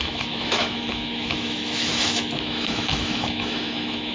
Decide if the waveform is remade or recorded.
remade